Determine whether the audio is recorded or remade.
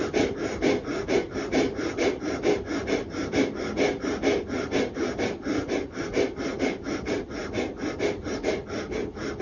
recorded